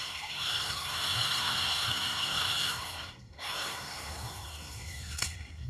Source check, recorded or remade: remade